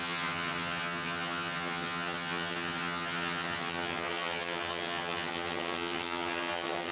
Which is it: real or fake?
fake